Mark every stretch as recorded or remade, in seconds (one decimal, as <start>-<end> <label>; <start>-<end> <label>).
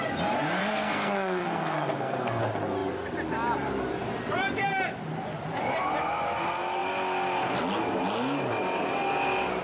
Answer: 0.0-0.6 recorded; 0.6-2.4 remade; 2.4-9.6 recorded